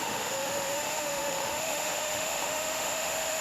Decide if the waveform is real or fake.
fake